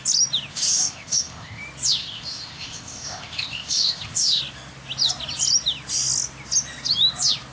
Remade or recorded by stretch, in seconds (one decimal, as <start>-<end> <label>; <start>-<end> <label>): 0.0-0.5 recorded; 0.5-1.6 remade; 1.6-2.0 recorded; 2.0-4.4 remade; 4.4-7.5 recorded